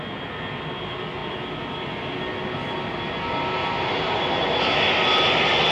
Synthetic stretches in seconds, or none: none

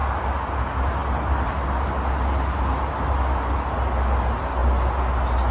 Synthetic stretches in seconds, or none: none

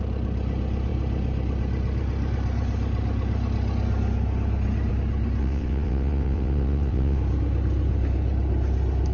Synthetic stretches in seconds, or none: 5.4-7.2 (vocoder, WaveNeXt)

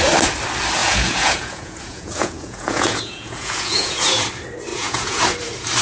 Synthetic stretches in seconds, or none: 0.8-4.3 (vocoder, Vocos); 4.7-5.2

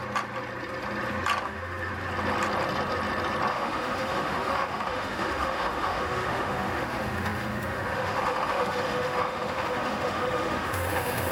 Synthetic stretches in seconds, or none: 1.4-1.9 (autoencoder, DAC-VAE); 3.5-11.3